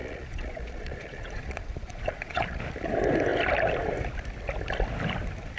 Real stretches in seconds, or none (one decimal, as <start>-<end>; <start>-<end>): 2.6-5.6